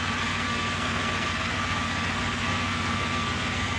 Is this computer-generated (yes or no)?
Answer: yes